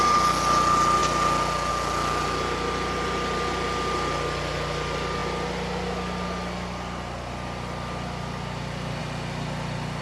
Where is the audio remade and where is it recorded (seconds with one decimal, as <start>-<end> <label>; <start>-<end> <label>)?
0.0-10.0 recorded